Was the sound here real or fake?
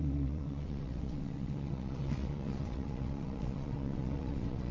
fake